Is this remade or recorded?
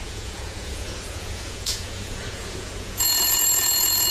remade